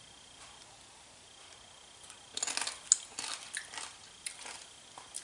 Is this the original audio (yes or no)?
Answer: yes